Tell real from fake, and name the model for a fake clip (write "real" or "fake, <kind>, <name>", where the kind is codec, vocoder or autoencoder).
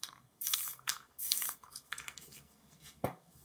fake, codec, SNAC